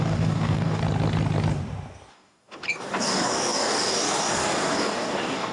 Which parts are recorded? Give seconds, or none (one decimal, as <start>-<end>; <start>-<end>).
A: 0.8-2.1